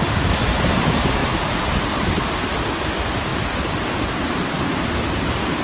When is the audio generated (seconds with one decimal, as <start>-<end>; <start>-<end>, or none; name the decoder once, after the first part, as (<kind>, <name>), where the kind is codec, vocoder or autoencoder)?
none